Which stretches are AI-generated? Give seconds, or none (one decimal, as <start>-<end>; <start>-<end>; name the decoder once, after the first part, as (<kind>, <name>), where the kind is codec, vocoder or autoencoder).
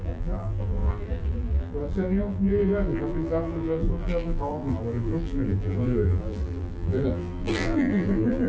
0.0-8.5 (vocoder, BigVGAN v2)